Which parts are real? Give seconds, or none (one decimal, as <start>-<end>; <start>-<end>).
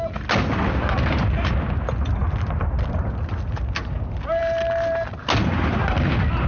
0.0-6.5